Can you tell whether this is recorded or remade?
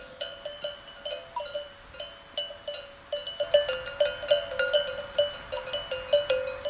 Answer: recorded